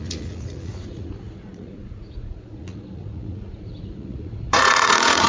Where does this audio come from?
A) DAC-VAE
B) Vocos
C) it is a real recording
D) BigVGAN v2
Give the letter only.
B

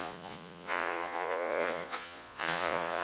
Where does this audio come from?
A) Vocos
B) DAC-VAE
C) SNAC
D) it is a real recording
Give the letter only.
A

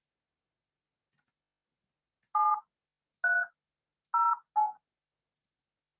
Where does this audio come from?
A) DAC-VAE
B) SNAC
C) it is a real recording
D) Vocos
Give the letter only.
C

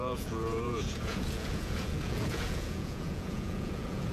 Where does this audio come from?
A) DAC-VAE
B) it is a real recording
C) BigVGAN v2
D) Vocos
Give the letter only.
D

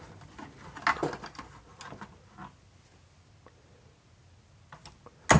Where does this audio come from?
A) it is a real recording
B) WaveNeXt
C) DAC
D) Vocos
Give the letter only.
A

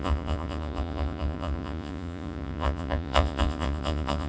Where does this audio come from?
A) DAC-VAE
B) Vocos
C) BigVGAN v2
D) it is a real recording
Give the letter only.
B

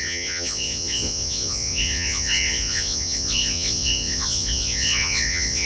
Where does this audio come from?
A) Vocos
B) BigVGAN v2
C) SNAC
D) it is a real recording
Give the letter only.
A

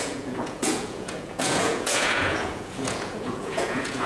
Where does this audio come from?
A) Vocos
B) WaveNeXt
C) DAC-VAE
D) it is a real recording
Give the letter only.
A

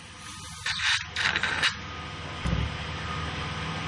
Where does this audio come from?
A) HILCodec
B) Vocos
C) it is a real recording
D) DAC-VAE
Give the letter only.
C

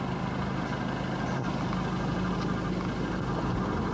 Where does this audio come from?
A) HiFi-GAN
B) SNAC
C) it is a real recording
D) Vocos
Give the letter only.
C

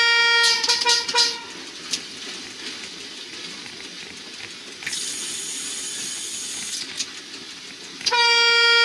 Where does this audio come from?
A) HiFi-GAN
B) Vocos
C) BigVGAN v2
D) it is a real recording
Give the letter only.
D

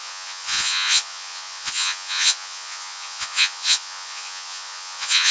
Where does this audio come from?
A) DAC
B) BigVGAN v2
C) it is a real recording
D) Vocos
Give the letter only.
D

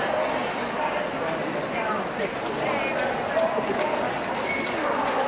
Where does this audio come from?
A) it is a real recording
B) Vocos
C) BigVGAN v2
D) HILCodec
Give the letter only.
A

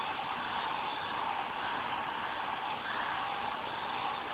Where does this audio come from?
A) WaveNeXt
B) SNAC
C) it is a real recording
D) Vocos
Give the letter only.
C